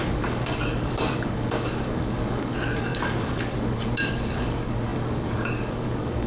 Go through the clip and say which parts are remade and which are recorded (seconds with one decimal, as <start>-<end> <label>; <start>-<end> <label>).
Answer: 0.0-6.3 remade